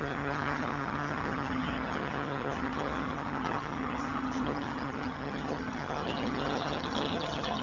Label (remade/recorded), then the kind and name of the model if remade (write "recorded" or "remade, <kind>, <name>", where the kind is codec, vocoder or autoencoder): remade, vocoder, HiFi-GAN